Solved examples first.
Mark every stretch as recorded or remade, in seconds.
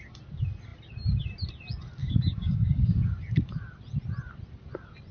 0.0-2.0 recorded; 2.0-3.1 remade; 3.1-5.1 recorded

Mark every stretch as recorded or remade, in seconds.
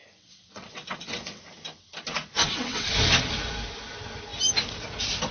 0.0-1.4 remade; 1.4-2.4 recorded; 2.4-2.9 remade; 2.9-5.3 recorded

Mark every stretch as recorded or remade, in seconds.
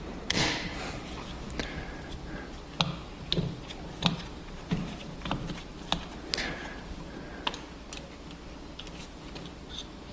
0.0-0.7 remade; 0.7-3.0 recorded; 3.0-5.7 remade; 5.7-9.0 recorded; 9.0-10.1 remade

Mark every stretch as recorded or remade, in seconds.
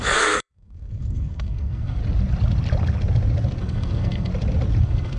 0.0-2.0 remade; 2.0-3.6 recorded; 3.6-4.3 remade; 4.3-4.8 recorded; 4.8-5.2 remade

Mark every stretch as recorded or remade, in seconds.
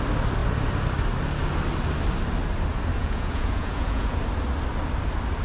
0.0-3.0 recorded; 3.0-4.2 remade; 4.2-5.4 recorded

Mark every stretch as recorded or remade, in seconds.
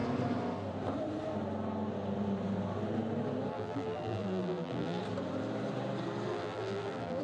0.0-3.5 recorded; 3.5-5.0 remade; 5.0-6.3 recorded; 6.3-7.2 remade